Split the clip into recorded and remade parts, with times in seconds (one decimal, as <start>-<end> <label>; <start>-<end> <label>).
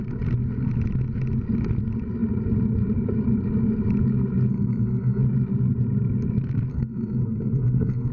0.0-4.5 recorded; 4.5-5.2 remade; 5.2-6.7 recorded; 6.7-8.1 remade